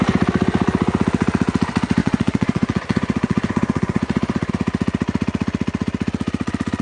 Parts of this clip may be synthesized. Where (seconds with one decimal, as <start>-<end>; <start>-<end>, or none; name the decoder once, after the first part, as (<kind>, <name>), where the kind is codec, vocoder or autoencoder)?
2.0-4.5 (vocoder, Vocos)